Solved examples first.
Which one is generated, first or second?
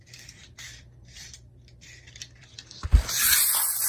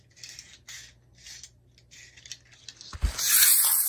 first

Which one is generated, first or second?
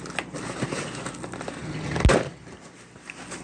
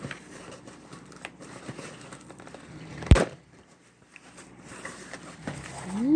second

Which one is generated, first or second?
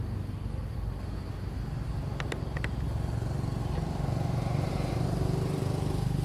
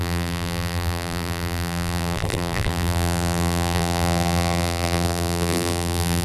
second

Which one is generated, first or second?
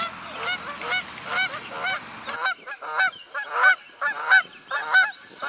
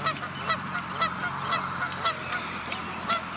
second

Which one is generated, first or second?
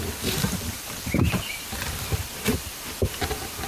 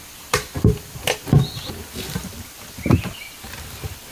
first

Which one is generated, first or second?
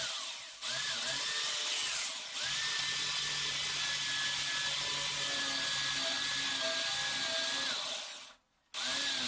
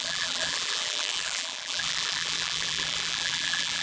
second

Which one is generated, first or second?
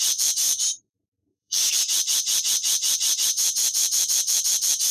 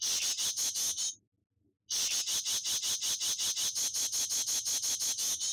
first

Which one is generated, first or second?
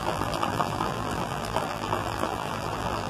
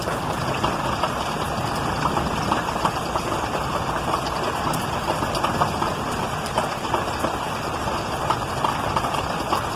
first